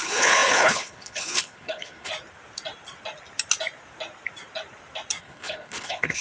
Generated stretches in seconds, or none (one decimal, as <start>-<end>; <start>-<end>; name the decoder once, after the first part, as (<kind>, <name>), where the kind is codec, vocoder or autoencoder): 0.0-2.1 (codec, HILCodec); 5.2-6.2